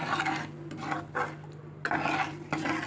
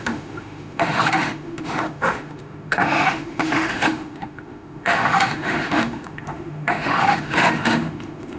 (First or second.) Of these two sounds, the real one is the first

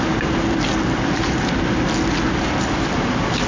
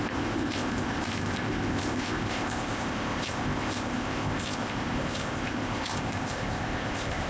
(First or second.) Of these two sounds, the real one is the first